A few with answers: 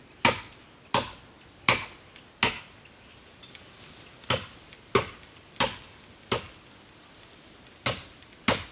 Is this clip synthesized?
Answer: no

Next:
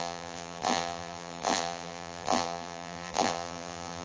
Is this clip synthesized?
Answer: yes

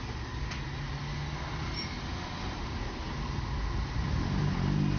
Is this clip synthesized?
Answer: no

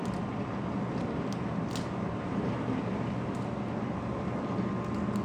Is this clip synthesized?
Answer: no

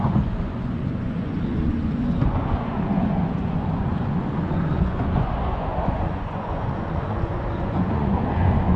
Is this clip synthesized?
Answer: yes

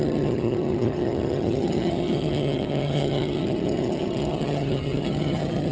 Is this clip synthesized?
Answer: yes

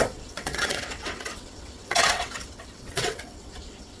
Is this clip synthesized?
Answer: yes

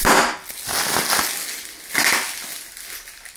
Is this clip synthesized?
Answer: no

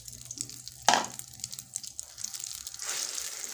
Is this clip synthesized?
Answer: no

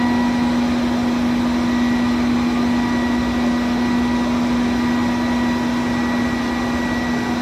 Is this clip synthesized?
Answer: no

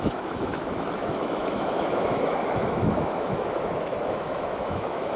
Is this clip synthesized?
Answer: yes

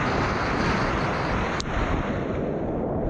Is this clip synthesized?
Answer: no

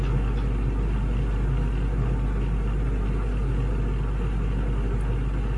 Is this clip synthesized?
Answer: no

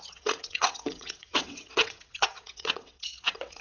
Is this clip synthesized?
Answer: yes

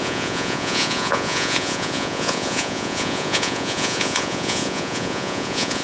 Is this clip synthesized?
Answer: yes